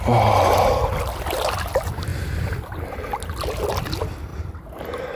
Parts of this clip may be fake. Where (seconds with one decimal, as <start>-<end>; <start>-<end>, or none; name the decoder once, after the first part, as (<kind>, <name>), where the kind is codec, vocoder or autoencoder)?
none